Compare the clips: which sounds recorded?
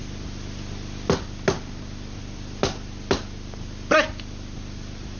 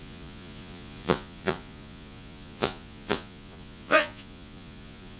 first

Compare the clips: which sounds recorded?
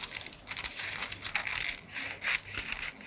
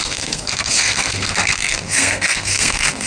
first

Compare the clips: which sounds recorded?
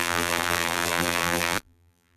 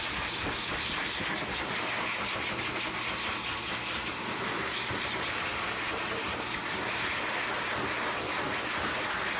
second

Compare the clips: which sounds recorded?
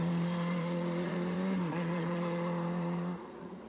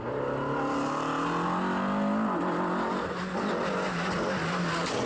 second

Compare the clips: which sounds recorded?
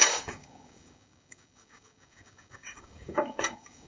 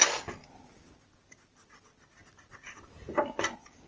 second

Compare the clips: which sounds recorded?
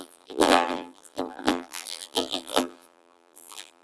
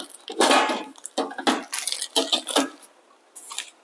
second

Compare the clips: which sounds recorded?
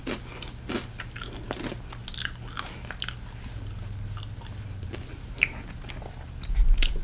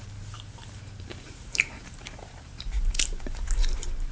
first